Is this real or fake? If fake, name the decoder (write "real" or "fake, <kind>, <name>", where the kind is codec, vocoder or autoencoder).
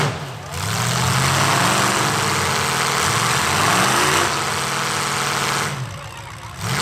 real